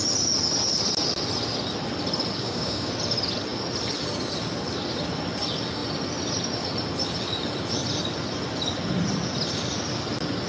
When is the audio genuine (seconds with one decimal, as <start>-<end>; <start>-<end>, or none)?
0.0-2.4; 2.9-10.5